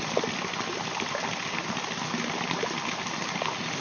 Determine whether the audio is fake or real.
real